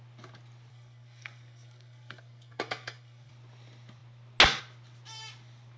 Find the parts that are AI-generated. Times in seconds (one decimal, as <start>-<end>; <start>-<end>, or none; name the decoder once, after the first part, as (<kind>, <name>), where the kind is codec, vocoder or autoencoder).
0.7-3.3 (codec, SNAC)